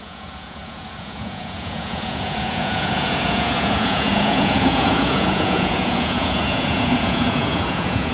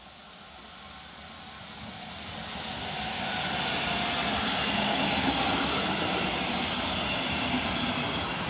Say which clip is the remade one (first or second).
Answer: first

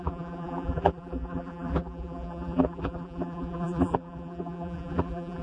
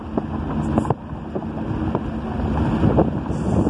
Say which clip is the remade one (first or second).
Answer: first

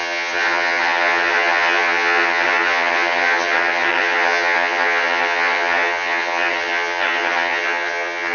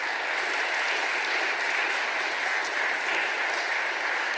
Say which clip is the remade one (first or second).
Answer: first